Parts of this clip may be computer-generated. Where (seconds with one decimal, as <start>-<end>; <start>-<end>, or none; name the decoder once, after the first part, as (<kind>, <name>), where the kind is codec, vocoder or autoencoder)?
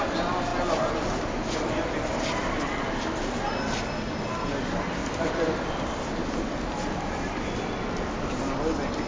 0.5-3.3 (vocoder, BigVGAN v2); 5.0-7.3